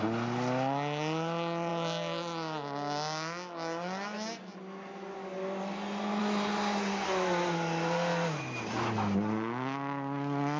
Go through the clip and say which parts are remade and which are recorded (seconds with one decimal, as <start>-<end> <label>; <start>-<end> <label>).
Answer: 0.0-10.6 recorded